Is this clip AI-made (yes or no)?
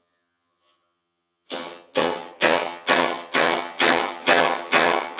yes